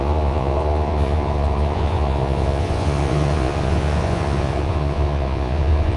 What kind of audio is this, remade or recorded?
remade